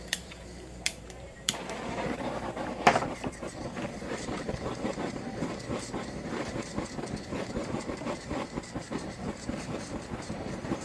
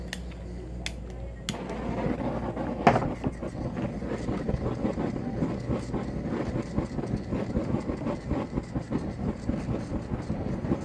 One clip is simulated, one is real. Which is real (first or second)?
second